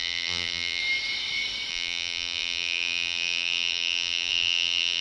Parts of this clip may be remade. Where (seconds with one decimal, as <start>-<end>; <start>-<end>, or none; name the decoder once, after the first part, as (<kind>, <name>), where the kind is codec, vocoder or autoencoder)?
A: 0.0-0.8 (vocoder, BigVGAN v2); 1.7-5.0